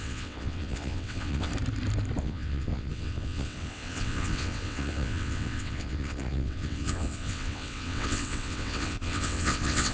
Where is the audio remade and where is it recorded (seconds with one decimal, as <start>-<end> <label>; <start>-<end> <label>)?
0.0-1.5 remade; 1.5-2.2 recorded; 2.2-9.9 remade

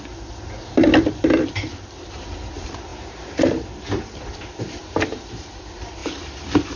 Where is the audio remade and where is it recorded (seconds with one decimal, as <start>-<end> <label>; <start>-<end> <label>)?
0.0-6.8 recorded

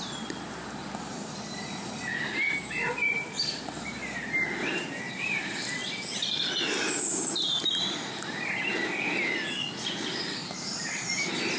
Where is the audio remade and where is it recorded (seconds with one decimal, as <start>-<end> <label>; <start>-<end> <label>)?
0.0-4.0 remade; 4.0-4.7 recorded; 4.7-5.8 remade; 5.8-8.1 recorded; 8.1-8.7 remade; 8.7-10.0 recorded; 10.0-11.6 remade

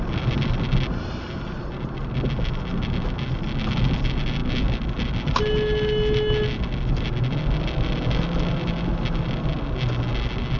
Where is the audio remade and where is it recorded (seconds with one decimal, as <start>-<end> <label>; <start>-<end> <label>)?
0.0-10.6 recorded

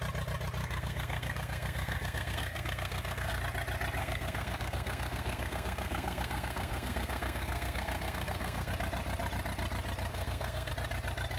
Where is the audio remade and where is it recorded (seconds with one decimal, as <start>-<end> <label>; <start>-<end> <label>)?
0.0-0.6 recorded; 0.6-3.4 remade; 3.4-4.0 recorded; 4.0-8.7 remade; 8.7-10.1 recorded; 10.1-10.7 remade; 10.7-11.4 recorded